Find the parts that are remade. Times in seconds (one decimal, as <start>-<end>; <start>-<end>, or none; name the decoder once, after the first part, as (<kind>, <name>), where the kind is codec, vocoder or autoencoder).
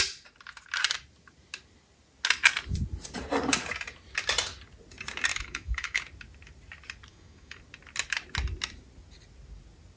5.3-6.0 (autoencoder, DAC-VAE); 7.1-7.6